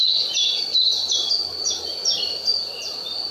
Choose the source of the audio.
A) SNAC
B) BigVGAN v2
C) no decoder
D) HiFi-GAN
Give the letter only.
C